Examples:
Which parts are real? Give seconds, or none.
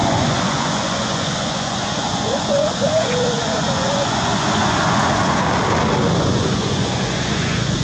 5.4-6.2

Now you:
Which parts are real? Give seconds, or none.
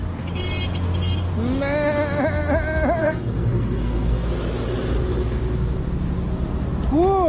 0.0-3.0; 4.3-7.3